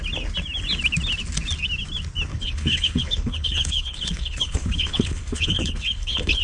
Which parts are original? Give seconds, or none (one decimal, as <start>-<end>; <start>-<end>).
0.0-2.3